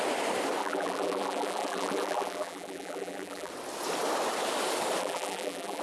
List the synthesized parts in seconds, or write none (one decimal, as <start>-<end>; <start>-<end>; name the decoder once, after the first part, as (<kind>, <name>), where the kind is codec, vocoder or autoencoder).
0.6-3.5 (vocoder, BigVGAN v2); 5.0-5.8